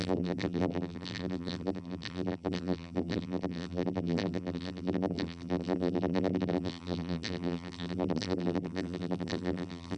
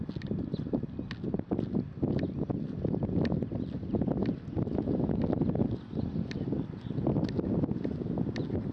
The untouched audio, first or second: second